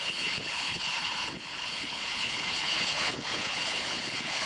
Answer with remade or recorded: remade